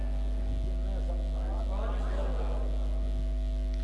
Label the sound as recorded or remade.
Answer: recorded